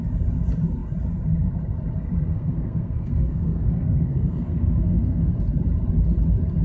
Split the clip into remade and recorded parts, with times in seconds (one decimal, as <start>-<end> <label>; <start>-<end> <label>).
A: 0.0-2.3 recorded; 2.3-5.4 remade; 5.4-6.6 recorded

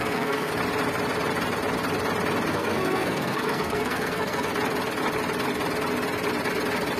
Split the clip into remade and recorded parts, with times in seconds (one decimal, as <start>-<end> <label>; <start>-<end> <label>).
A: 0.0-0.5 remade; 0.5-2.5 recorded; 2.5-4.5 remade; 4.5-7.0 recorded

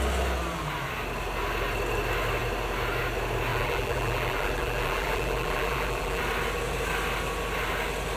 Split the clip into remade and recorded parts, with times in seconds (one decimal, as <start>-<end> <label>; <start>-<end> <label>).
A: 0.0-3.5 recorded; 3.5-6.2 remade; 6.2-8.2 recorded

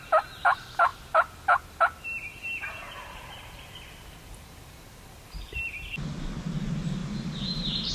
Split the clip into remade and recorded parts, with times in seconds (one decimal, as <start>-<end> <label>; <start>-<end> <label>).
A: 0.0-7.0 recorded; 7.0-7.9 remade

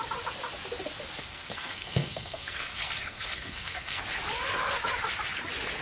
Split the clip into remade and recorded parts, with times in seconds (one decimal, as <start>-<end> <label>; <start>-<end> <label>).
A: 0.0-1.2 recorded; 1.2-4.0 remade; 4.0-5.8 recorded